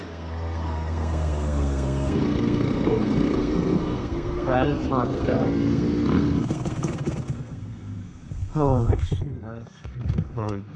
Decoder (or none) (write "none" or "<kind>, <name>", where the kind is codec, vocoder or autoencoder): codec, SNAC